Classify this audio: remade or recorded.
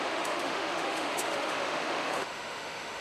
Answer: remade